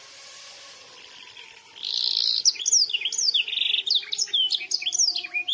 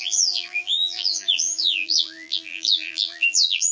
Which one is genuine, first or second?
first